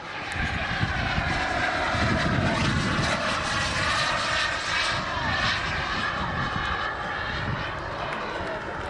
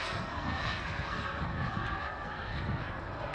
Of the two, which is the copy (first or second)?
second